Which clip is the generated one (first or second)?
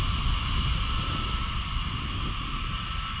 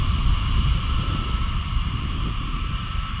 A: second